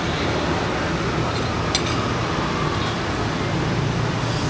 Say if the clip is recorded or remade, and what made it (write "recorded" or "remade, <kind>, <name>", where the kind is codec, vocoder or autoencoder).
recorded